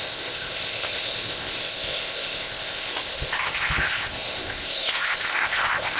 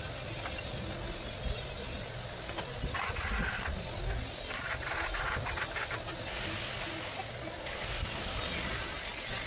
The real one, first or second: second